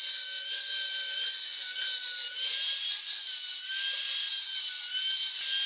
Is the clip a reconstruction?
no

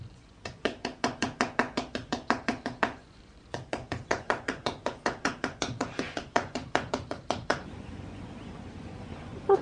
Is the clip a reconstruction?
yes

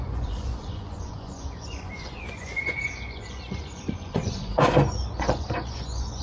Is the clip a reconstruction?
yes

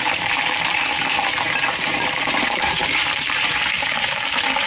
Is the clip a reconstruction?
yes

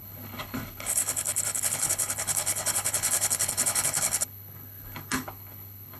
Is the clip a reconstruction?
yes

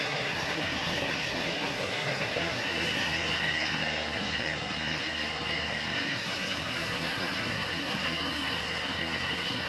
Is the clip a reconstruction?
yes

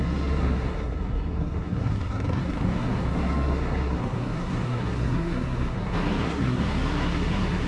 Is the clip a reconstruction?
yes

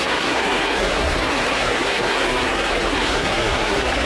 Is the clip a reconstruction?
yes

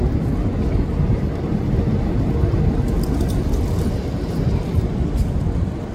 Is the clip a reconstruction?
no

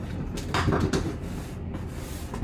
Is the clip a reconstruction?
no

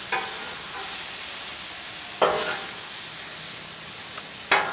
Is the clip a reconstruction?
no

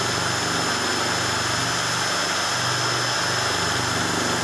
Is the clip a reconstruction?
no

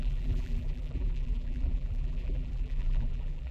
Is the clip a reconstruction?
yes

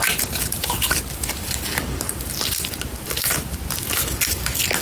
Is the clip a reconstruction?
no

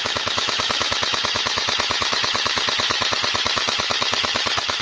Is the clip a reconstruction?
yes